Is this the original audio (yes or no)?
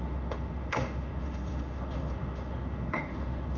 no